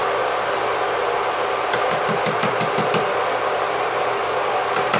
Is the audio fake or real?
real